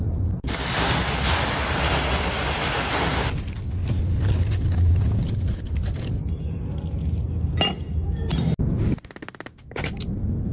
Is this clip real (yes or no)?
yes